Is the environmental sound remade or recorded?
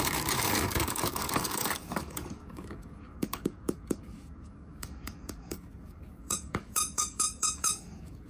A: remade